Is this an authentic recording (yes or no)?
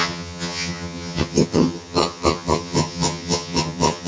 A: no